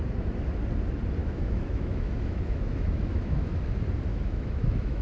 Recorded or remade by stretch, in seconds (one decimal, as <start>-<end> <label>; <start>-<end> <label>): 0.0-1.2 recorded; 1.2-3.6 remade; 3.6-4.1 recorded; 4.1-5.0 remade